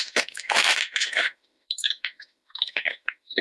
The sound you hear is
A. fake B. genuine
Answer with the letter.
A